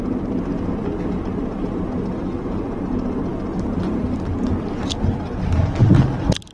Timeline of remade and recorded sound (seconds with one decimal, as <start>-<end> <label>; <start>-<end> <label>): 0.0-6.5 recorded